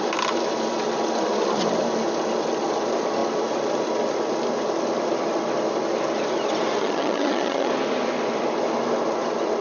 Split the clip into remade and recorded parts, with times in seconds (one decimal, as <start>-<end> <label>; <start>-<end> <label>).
0.0-6.8 recorded; 6.8-7.7 remade; 7.7-9.6 recorded